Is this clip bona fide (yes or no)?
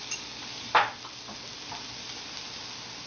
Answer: yes